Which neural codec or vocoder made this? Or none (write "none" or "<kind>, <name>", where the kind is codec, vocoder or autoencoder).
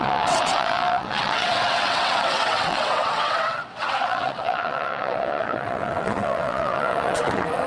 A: vocoder, WaveNeXt